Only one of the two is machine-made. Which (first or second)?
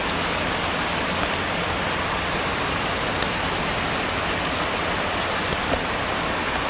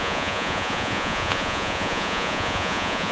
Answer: second